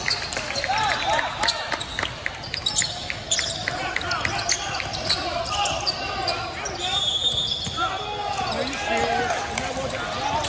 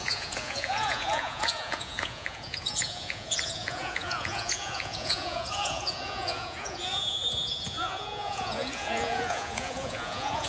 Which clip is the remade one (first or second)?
second